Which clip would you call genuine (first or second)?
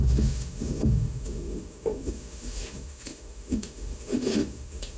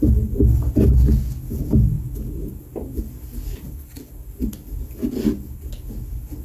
second